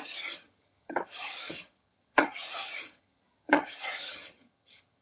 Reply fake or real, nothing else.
fake